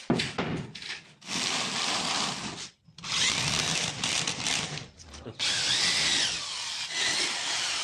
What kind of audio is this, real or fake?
real